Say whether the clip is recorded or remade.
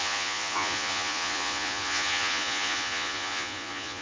remade